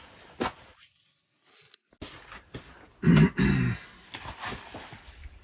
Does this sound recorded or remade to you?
recorded